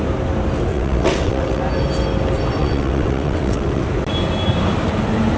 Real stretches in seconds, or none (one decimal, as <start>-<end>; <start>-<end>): 0.0-0.7; 1.6-2.6; 3.8-5.4